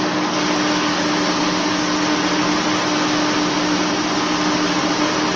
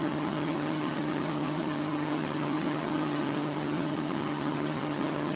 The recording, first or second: first